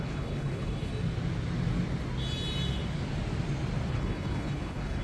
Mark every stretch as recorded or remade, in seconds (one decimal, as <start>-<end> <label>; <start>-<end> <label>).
0.0-0.9 remade; 0.9-3.9 recorded; 3.9-5.0 remade